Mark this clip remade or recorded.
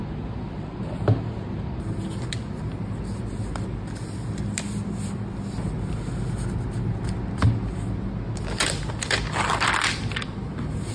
recorded